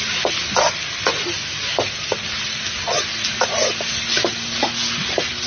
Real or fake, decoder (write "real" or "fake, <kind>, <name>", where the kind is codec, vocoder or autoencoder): real